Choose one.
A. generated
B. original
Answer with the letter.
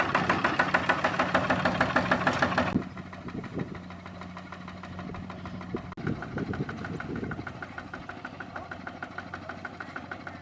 B